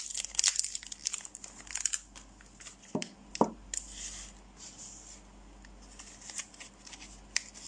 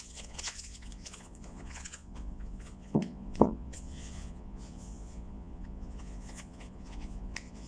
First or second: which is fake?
second